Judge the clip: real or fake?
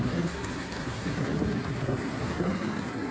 fake